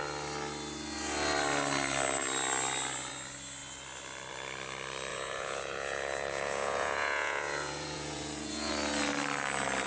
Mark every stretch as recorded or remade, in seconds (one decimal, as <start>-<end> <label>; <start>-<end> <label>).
0.0-5.1 recorded; 5.1-8.7 remade; 8.7-9.9 recorded